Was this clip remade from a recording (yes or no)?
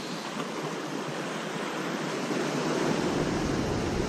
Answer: yes